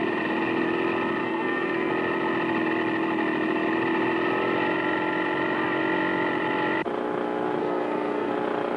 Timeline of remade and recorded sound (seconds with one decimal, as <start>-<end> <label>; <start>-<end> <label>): 0.0-1.2 recorded; 1.2-1.9 remade; 1.9-7.6 recorded; 7.6-8.3 remade; 8.3-8.8 recorded